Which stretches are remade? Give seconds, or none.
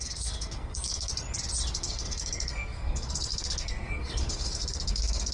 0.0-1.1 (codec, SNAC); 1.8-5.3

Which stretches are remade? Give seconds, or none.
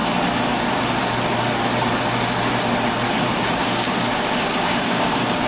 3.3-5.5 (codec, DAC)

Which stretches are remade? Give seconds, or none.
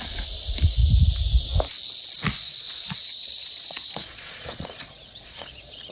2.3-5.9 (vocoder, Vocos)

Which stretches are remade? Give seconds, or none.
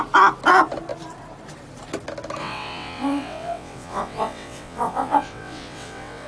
2.4-6.3 (vocoder, WaveNeXt)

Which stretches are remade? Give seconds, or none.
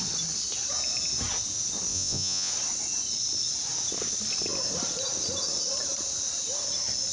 1.9-2.5 (vocoder, Vocos)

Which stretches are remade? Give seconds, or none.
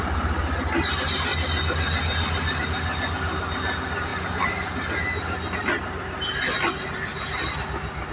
none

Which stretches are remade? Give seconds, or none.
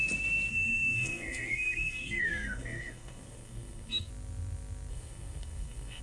0.5-4.1 (codec, SNAC); 4.9-6.0